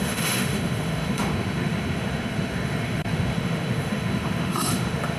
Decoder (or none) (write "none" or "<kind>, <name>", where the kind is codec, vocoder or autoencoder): autoencoder, DAC-VAE